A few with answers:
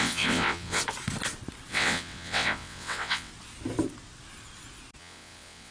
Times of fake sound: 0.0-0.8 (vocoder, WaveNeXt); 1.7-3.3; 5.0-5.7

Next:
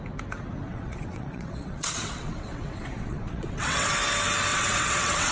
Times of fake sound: 0.7-3.9 (vocoder, WaveNeXt); 4.5-5.3

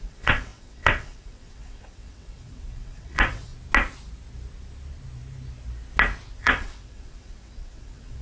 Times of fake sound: 0.0-3.5 (vocoder, WaveNeXt); 6.4-8.2